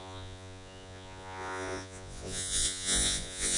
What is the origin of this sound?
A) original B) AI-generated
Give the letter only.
B